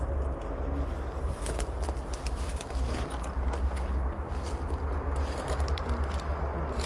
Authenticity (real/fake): real